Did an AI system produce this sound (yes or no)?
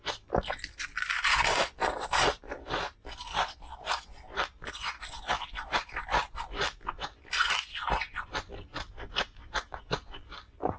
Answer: no